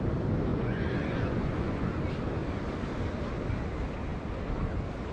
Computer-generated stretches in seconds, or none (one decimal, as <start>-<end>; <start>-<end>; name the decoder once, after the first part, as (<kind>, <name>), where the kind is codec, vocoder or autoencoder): 0.5-2.0 (vocoder, Vocos)